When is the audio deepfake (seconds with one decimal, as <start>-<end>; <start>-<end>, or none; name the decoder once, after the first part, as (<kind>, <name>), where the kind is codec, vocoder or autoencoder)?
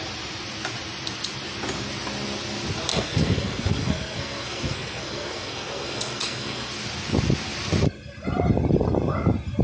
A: 2.9-6.7 (codec, SNAC)